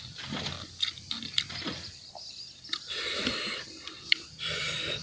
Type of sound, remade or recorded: remade